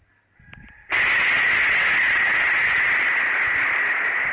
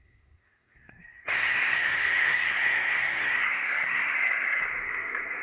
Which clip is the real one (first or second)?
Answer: first